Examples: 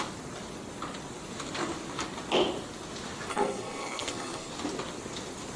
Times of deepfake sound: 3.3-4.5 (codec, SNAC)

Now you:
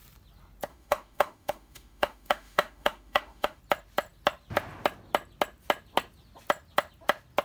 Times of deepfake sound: 0.7-3.6 (autoencoder, DAC-VAE)

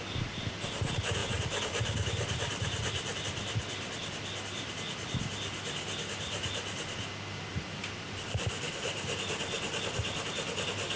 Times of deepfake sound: none

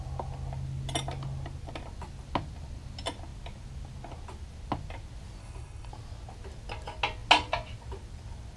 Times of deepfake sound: 5.4-5.9 (codec, HILCodec)